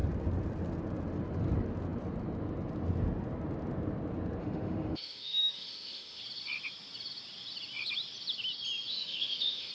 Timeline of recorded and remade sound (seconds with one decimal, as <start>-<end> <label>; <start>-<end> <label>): 0.0-4.4 recorded; 4.4-6.2 remade; 6.2-8.9 recorded; 8.9-9.7 remade